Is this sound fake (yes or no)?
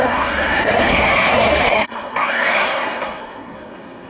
yes